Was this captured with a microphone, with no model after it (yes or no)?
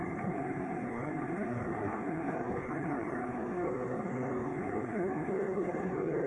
no